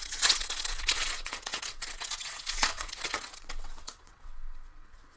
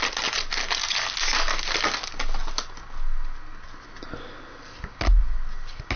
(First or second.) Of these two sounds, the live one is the second